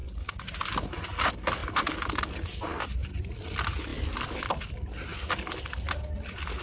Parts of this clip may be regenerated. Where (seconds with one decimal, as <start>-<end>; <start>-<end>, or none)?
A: 3.9-4.5